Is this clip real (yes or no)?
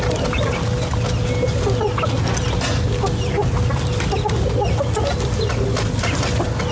yes